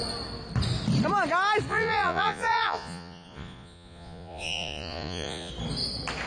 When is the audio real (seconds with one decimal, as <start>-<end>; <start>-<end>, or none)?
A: 0.0-1.7; 5.5-6.3